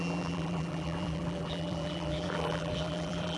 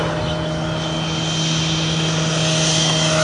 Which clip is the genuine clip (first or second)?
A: second